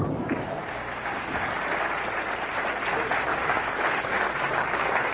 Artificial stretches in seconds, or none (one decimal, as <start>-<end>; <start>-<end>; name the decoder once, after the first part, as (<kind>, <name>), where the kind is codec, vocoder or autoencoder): 0.6-1.5 (codec, DAC); 3.3-5.1